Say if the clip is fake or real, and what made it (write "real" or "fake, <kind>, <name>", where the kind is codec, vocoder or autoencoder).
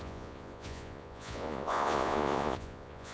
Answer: fake, vocoder, Vocos